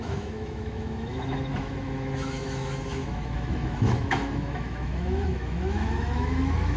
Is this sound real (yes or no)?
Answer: no